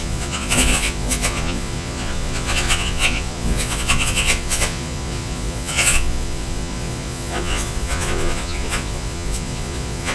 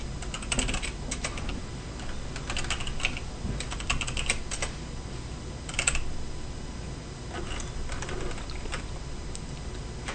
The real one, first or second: second